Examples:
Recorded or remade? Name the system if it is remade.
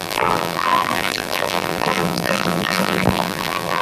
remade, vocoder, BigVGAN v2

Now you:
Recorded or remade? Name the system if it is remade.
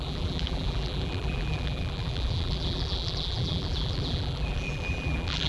remade, vocoder, BigVGAN v2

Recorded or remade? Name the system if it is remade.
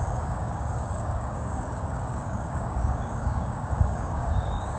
remade, codec, DAC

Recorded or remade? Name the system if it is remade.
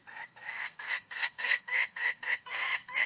remade, codec, SNAC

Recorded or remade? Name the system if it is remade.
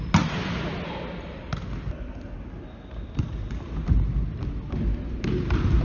recorded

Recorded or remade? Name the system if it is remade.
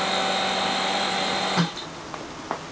recorded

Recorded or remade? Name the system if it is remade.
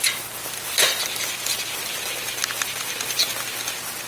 recorded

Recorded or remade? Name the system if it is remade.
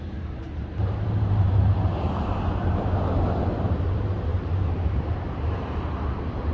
remade, vocoder, BigVGAN v2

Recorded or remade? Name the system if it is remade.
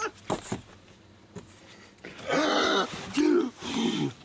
recorded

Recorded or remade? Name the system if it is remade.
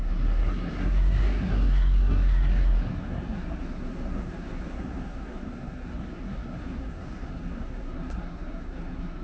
remade, codec, SNAC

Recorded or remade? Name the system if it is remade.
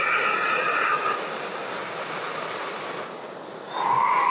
recorded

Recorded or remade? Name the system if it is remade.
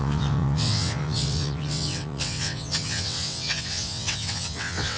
remade, vocoder, WaveNeXt